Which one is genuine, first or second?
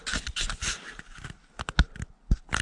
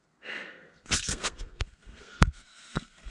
first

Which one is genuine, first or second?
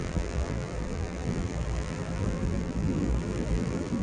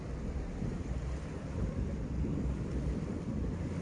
second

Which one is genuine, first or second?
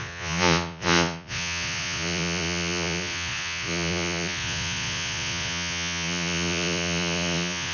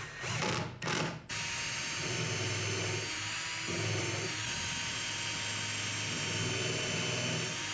second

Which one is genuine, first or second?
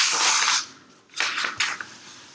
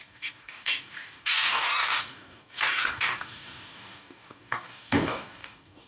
first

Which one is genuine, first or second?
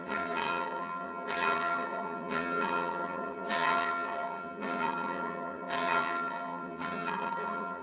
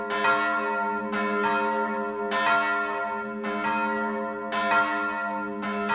second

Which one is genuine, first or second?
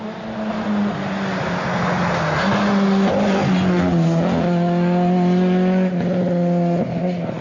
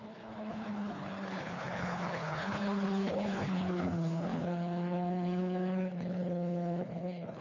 first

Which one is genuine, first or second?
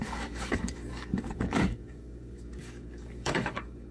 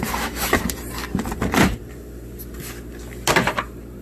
second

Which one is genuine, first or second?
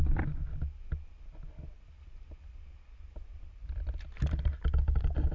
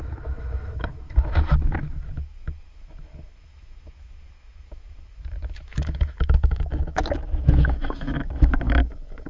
first